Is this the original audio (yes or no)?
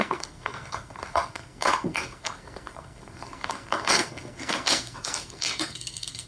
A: no